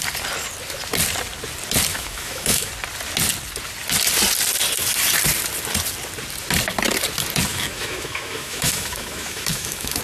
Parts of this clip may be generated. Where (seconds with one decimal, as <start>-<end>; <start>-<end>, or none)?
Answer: 1.9-2.7; 7.5-10.0